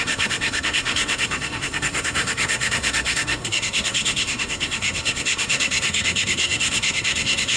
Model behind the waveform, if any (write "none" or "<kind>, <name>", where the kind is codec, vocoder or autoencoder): codec, SNAC